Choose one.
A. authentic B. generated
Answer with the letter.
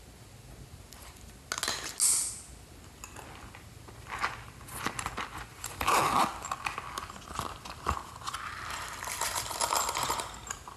A